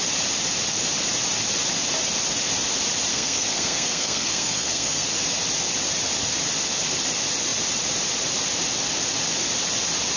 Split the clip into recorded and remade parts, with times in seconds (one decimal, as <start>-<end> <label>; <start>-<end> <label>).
0.0-3.1 recorded; 3.1-5.1 remade; 5.1-10.2 recorded